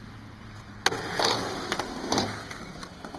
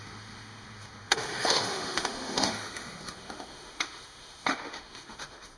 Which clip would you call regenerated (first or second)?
second